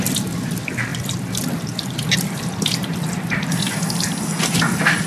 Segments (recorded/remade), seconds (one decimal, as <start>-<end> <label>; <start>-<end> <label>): 0.0-0.9 recorded; 0.9-4.0 remade; 4.0-5.1 recorded